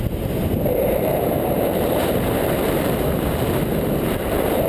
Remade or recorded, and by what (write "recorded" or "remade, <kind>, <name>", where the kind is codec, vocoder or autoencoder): remade, vocoder, BigVGAN v2